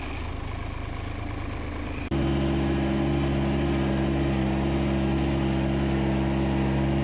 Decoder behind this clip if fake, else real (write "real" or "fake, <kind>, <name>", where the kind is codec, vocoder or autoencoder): real